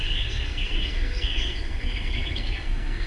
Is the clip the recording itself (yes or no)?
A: no